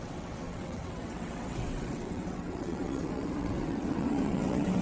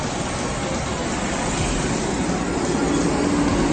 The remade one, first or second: first